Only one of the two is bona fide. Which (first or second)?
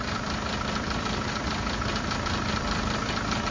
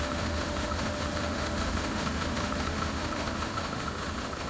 first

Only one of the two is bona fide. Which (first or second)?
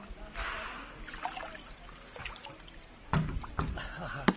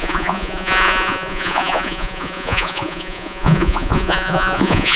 first